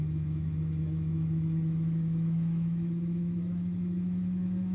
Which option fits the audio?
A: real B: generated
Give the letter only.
B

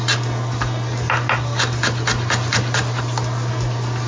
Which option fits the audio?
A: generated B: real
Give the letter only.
B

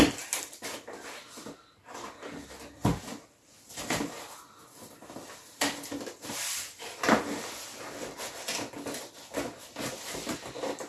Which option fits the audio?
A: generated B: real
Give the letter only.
B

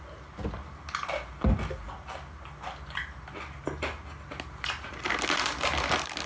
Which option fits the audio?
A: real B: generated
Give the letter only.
A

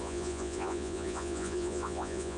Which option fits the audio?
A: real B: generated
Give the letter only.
B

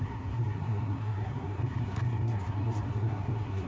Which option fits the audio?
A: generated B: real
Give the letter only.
A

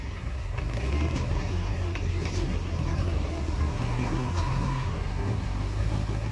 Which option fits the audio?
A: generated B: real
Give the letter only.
A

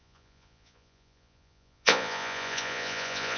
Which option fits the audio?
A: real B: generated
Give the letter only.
B